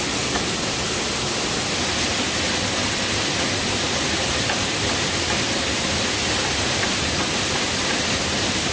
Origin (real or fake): real